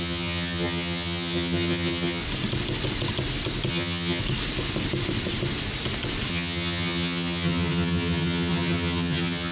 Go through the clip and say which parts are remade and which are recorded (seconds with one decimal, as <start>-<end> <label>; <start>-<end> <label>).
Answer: 0.0-2.2 remade; 2.2-3.7 recorded; 3.7-4.2 remade; 4.2-6.3 recorded; 6.3-9.5 remade